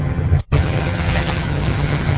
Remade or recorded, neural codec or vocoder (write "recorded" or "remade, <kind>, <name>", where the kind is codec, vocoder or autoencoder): remade, vocoder, HiFi-GAN